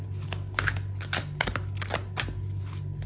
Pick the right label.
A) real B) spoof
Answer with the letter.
A